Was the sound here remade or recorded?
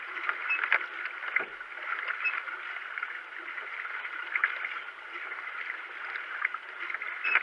recorded